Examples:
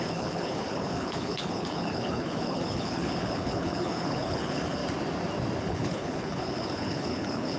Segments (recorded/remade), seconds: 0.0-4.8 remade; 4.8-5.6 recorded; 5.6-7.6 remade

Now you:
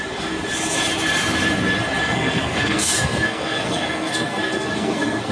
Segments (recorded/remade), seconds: 0.0-2.0 recorded; 2.0-5.3 remade

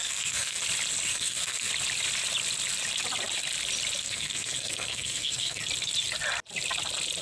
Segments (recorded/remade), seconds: 0.0-0.6 remade; 0.6-1.1 recorded; 1.1-1.7 remade; 1.7-4.0 recorded; 4.0-5.6 remade; 5.6-7.2 recorded

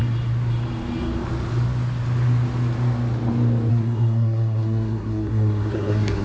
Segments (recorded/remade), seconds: 0.0-3.7 recorded; 3.7-6.2 remade

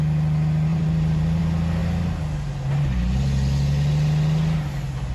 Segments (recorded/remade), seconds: 0.0-0.7 recorded; 0.7-1.4 remade; 1.4-5.1 recorded

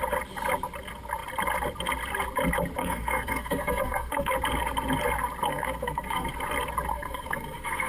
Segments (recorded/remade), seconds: 0.0-2.8 recorded; 2.8-4.3 remade; 4.3-5.5 recorded; 5.5-6.3 remade; 6.3-6.9 recorded; 6.9-7.9 remade